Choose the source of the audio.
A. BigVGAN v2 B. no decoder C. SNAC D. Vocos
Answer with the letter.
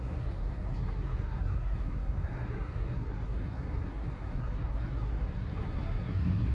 C